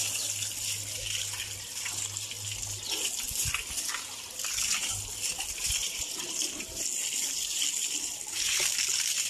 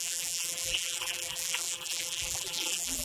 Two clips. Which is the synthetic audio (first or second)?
second